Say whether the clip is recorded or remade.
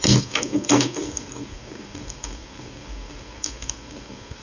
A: remade